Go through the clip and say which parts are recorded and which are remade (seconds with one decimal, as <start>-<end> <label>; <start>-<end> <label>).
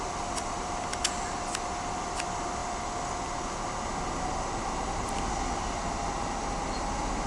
0.0-0.9 remade; 0.9-1.8 recorded; 1.8-2.6 remade; 2.6-7.3 recorded